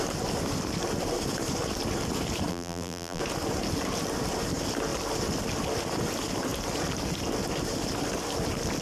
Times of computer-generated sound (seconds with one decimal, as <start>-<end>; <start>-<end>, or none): 2.5-3.2